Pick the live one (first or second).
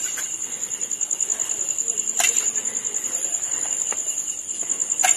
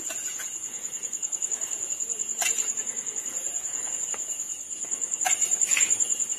first